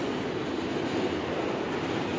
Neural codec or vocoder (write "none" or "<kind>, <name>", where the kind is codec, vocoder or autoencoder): none